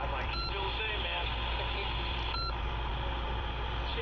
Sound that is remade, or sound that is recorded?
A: recorded